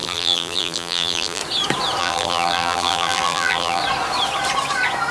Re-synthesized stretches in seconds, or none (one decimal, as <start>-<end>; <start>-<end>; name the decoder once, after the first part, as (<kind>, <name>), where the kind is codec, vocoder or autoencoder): 0.0-1.4 (vocoder, BigVGAN v2); 2.0-3.8